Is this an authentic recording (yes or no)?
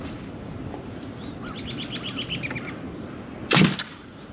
yes